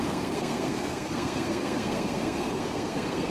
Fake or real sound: fake